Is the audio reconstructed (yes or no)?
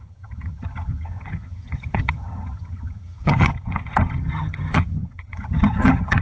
yes